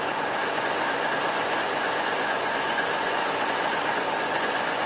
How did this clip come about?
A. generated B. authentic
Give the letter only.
A